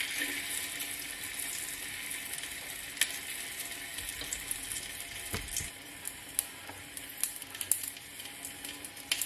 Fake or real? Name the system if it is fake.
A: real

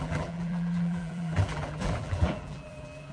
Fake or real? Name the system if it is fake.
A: fake, vocoder, BigVGAN v2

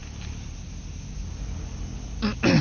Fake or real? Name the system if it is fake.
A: real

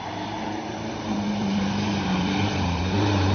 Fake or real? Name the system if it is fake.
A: fake, vocoder, BigVGAN v2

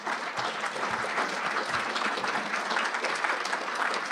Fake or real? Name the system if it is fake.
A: fake, vocoder, BigVGAN v2